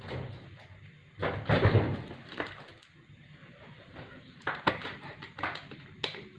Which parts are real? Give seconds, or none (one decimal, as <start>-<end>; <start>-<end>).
0.0-1.9; 4.7-6.4